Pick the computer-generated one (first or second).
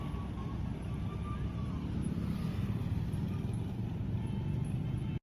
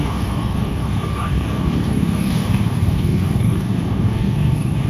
second